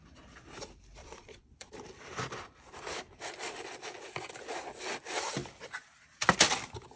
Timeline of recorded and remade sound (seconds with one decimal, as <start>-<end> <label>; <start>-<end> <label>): 0.0-1.0 recorded; 1.0-1.7 remade; 1.7-7.0 recorded